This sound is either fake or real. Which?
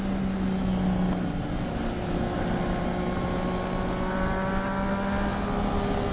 real